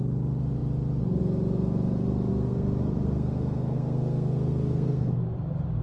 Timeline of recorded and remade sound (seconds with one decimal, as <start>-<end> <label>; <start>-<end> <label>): 0.0-2.3 recorded; 2.3-5.2 remade; 5.2-5.8 recorded